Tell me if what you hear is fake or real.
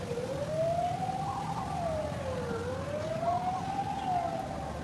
real